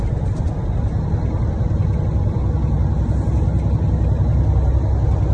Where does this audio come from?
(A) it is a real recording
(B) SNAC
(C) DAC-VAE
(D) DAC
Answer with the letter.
A